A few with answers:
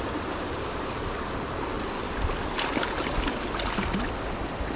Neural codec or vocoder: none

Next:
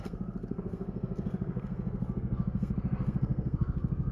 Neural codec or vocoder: codec, SNAC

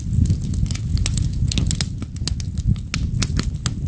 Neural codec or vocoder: none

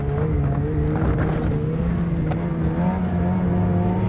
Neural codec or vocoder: none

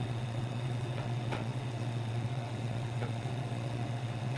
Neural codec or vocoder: vocoder, WaveNeXt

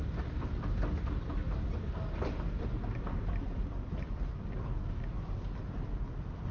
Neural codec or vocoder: none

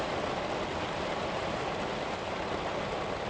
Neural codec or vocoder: none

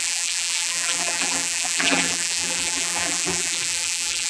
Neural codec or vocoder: vocoder, BigVGAN v2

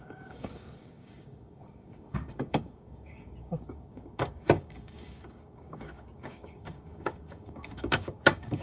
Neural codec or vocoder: codec, DAC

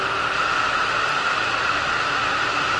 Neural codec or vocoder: none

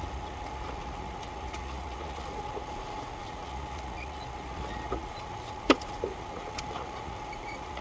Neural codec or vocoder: vocoder, Vocos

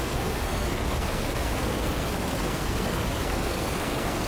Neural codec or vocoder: codec, SNAC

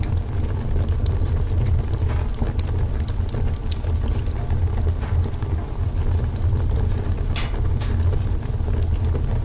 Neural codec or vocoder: none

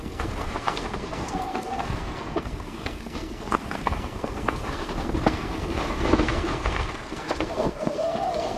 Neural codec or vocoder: codec, SNAC